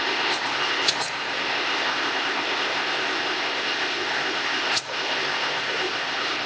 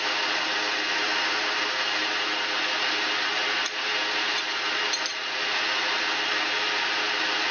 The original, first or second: second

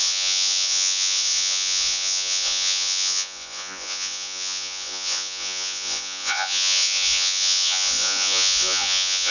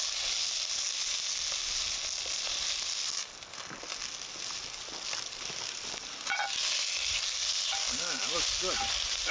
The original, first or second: second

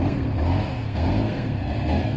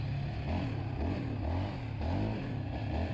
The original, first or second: second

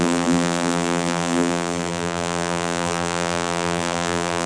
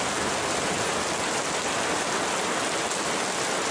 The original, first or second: second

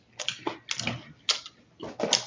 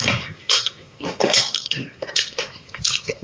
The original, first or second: first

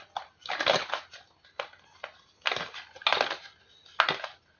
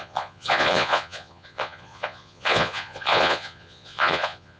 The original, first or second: first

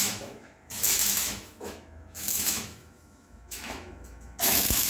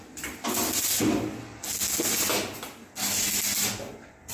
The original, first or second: second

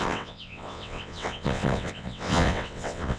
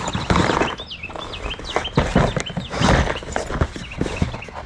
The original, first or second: second